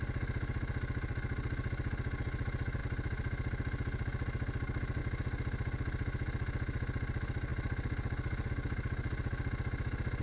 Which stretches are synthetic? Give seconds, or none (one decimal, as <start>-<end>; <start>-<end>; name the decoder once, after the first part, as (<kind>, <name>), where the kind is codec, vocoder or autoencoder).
none